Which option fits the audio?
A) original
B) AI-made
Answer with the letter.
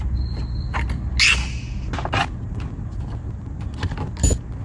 A